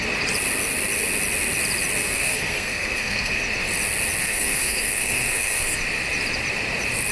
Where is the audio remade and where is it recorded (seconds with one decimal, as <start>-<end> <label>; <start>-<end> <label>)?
0.0-2.0 recorded; 2.0-3.4 remade; 3.4-4.2 recorded; 4.2-5.8 remade; 5.8-7.1 recorded